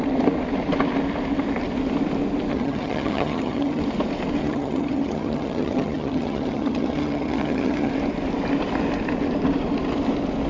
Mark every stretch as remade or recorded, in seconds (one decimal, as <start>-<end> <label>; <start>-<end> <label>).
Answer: 0.0-2.5 recorded; 2.5-3.8 remade; 3.8-4.4 recorded; 4.4-7.9 remade; 7.9-10.5 recorded